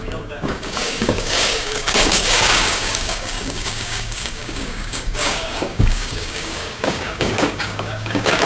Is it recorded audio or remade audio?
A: remade